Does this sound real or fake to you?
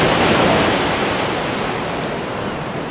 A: real